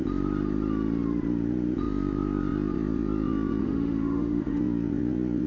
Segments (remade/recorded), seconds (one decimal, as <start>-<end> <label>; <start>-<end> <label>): 0.0-3.6 recorded; 3.6-4.6 remade; 4.6-5.5 recorded